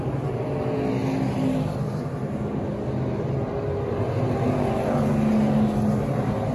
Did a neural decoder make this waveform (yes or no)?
no